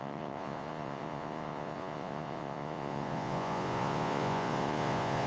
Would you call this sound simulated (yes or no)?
yes